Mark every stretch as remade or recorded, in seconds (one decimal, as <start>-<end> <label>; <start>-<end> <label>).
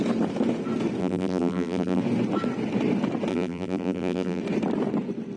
0.0-1.0 recorded; 1.0-2.0 remade; 2.0-3.3 recorded; 3.3-4.4 remade; 4.4-5.4 recorded